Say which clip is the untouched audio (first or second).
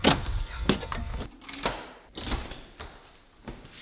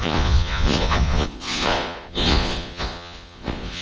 first